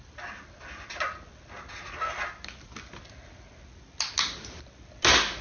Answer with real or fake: real